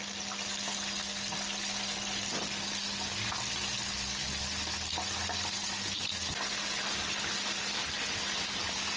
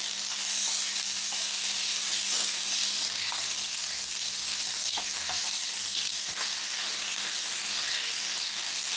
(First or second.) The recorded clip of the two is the first